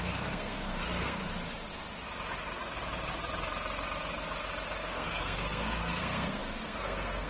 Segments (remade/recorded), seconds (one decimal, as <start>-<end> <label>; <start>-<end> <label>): 0.0-1.2 remade; 1.2-4.8 recorded; 4.8-7.3 remade